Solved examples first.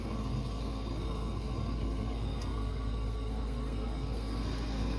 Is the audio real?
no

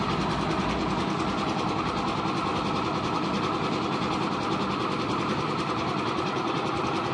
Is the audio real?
yes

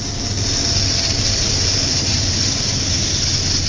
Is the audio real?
yes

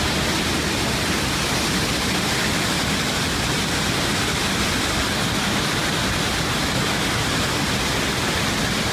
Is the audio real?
yes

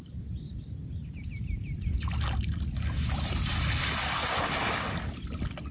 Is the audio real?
yes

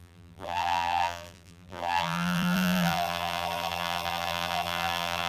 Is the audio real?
no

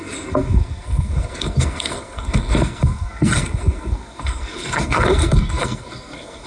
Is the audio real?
no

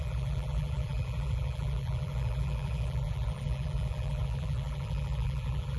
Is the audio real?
no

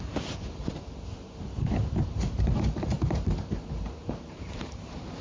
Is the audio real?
no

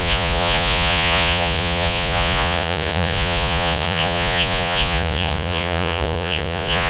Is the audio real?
no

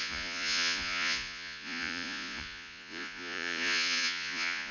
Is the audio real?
no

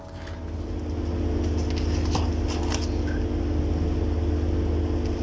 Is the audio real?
yes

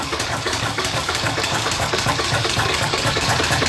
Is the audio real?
no